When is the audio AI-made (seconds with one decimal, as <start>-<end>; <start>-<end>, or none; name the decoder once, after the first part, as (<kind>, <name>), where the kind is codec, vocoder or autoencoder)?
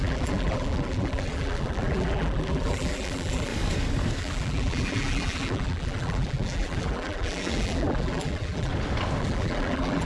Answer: 0.0-3.5 (vocoder, BigVGAN v2); 4.2-8.7; 9.2-10.1